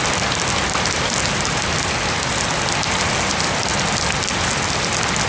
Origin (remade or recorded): recorded